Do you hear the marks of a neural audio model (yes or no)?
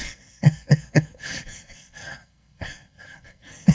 yes